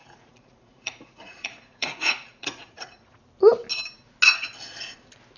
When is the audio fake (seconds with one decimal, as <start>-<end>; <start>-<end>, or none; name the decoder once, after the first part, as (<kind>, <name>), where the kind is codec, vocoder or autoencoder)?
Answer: 0.0-3.2 (vocoder, Vocos)